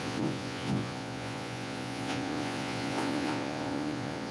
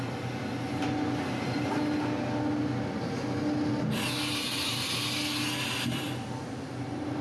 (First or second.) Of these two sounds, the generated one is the first